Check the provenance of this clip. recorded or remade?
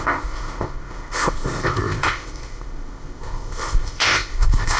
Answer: remade